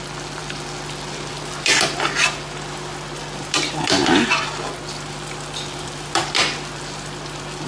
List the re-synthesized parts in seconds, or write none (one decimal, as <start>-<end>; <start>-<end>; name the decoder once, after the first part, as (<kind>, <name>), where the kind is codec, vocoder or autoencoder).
none